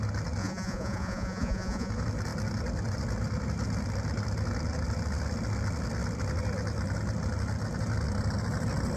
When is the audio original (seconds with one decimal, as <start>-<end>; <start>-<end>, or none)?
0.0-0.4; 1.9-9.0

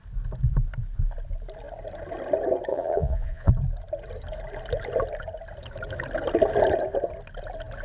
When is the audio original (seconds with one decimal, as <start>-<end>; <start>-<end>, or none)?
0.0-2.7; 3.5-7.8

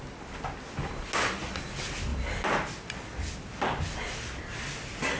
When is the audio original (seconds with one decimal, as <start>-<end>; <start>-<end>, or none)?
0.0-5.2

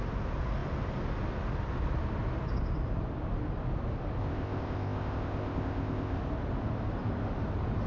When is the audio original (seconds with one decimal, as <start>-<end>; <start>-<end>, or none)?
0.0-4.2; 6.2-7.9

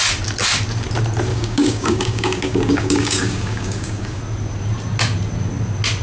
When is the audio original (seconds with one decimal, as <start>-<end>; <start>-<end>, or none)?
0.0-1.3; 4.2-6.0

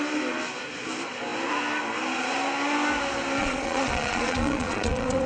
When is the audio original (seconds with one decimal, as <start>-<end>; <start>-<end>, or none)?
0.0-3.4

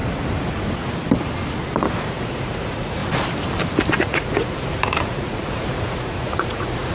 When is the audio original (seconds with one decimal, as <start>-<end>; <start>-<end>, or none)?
0.0-2.1; 3.0-4.0

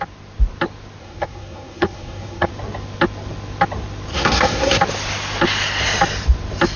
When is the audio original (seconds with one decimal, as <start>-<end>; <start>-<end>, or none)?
0.0-1.0; 2.5-4.1; 4.8-6.8